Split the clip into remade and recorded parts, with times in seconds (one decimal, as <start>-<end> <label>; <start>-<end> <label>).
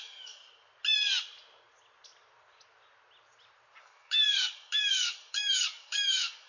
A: 0.0-0.4 remade; 0.4-3.8 recorded; 3.8-6.5 remade